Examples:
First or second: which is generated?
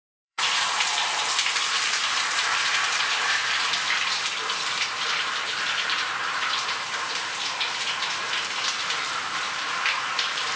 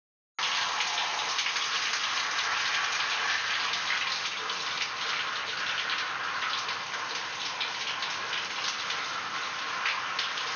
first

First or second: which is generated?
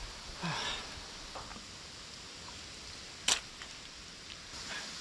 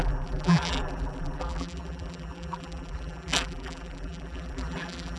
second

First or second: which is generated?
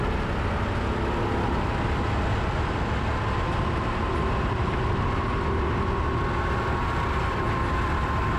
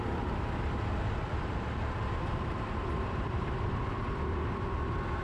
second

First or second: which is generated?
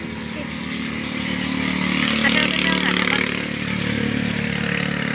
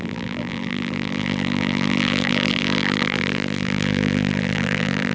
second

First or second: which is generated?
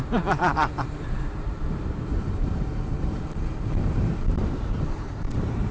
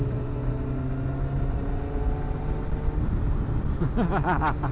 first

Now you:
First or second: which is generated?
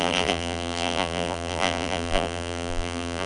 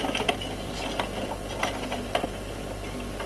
first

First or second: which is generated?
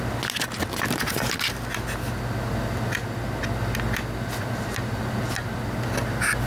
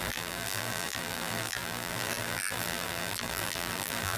second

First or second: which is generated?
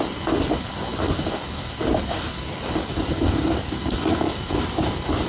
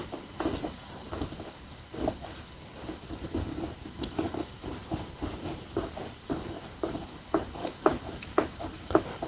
second